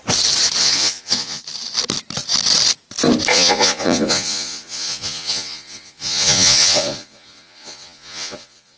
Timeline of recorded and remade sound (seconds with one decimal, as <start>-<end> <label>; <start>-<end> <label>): 0.0-0.6 recorded; 0.6-1.4 remade; 1.4-3.3 recorded; 3.3-8.8 remade